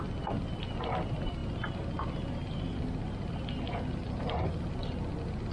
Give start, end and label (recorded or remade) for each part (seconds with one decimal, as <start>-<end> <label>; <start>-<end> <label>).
0.0-5.5 recorded